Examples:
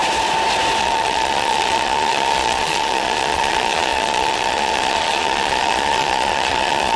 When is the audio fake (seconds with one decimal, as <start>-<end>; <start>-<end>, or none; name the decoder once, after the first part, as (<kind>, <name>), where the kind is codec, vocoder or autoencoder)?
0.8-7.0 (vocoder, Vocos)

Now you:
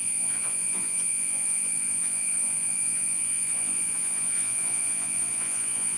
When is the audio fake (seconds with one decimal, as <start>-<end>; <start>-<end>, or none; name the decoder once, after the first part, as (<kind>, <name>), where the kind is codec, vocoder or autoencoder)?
0.0-6.0 (vocoder, Vocos)

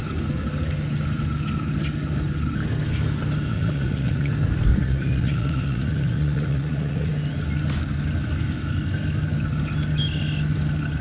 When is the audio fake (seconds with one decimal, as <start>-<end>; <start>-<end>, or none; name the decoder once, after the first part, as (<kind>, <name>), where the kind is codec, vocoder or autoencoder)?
3.5-4.3 (vocoder, Vocos); 4.7-7.1

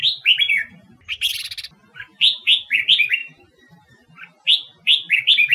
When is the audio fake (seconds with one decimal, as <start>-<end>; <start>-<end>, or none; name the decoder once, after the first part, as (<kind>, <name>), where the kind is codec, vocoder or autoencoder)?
1.9-2.6 (vocoder, Vocos)